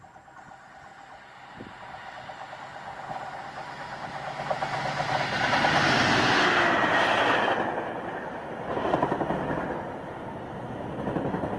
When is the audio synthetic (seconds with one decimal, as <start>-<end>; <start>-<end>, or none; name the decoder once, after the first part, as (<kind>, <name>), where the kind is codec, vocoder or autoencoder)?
none

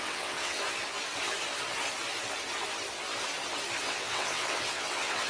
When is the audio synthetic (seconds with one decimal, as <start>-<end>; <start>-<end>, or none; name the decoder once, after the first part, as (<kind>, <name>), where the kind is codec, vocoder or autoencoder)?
0.0-0.6 (vocoder, WaveNeXt); 3.8-5.3

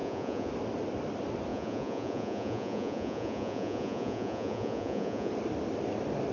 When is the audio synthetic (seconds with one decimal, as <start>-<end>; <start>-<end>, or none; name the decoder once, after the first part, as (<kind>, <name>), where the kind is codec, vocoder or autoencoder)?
0.0-0.5 (vocoder, Vocos); 1.5-5.3

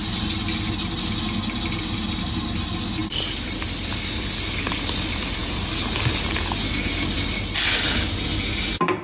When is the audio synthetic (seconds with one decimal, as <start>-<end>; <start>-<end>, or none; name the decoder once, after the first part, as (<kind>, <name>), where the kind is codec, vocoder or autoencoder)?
none

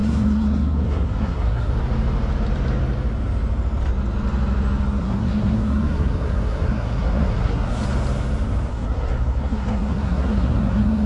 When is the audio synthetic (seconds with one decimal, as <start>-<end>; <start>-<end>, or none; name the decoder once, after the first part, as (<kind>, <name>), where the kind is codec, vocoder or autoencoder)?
0.0-1.7 (codec, SNAC); 5.0-7.8; 8.7-11.1